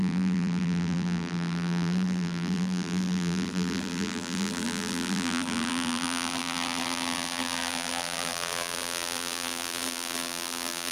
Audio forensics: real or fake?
fake